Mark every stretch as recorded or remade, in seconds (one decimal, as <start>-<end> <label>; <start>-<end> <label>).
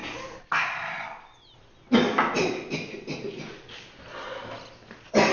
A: 0.0-5.3 recorded